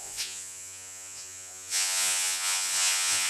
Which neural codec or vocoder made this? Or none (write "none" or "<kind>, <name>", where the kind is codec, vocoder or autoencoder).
vocoder, Vocos